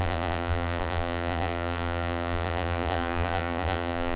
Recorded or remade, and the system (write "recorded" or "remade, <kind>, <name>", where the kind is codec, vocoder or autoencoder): remade, vocoder, BigVGAN v2